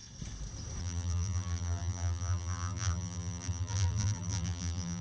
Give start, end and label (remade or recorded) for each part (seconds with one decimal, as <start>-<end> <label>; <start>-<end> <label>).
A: 0.0-0.8 recorded; 0.8-5.0 remade